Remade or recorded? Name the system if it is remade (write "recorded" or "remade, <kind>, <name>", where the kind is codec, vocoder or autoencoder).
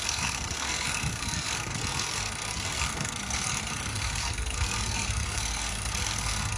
remade, codec, SNAC